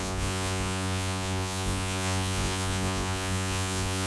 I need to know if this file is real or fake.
fake